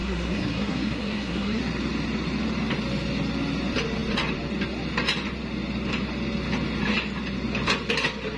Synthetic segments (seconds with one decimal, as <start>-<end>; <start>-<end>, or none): 0.0-1.6